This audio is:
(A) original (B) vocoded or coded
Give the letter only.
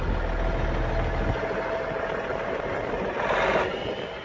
A